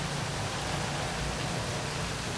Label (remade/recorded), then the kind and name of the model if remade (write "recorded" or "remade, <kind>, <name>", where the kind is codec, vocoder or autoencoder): recorded